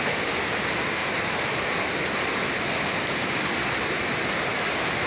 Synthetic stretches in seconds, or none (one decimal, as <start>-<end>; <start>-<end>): none